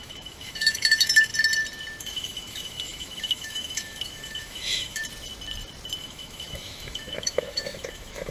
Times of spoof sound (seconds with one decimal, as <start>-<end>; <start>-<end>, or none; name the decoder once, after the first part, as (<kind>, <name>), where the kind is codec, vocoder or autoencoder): 0.0-1.3 (autoencoder, DAC-VAE); 2.0-5.0; 6.0-8.3